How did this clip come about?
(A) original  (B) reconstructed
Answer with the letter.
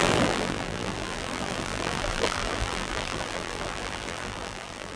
B